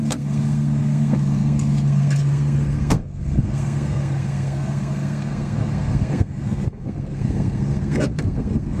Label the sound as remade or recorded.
remade